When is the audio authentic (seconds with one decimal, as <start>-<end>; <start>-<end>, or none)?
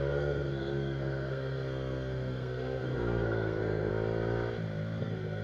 3.9-5.0